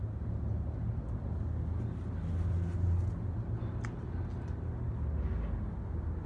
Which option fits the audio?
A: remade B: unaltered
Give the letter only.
B